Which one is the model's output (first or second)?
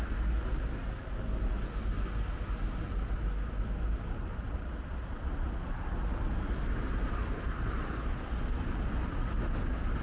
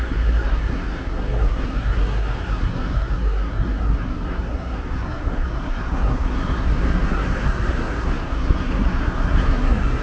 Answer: second